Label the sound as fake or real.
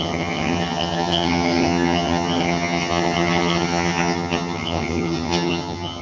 fake